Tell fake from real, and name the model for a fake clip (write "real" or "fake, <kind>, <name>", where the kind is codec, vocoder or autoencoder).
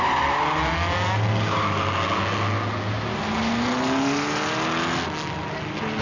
real